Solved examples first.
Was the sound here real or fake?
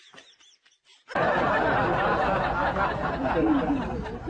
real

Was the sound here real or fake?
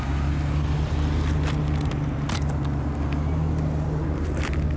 real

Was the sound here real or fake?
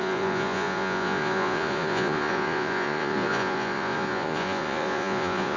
fake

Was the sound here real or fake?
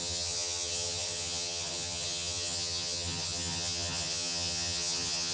fake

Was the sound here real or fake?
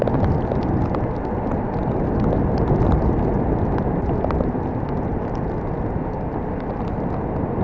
real